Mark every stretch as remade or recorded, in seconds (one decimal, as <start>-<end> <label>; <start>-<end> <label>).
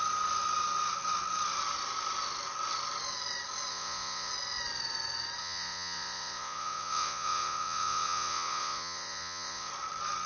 0.0-3.7 recorded; 3.7-4.3 remade; 4.3-5.4 recorded; 5.4-9.7 remade; 9.7-10.3 recorded